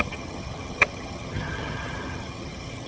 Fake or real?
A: fake